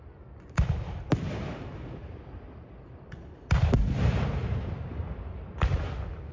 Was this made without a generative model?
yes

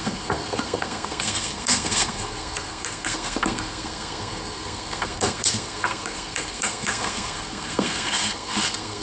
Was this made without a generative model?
no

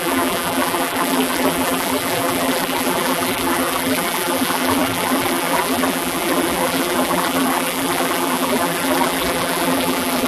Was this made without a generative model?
no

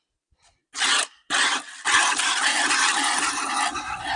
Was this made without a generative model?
yes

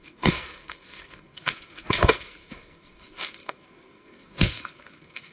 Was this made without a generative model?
no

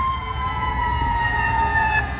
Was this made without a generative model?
no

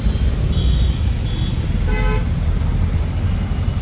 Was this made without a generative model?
yes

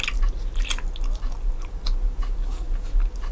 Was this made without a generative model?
yes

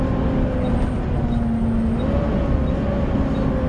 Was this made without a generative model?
yes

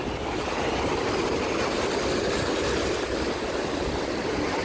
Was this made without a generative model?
yes